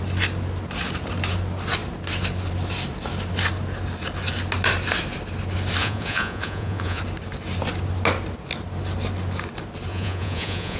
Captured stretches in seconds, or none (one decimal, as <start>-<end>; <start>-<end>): 0.0-5.8; 7.0-9.9